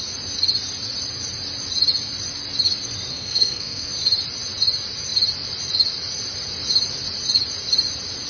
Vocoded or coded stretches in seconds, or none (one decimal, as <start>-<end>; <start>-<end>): 3.1-3.9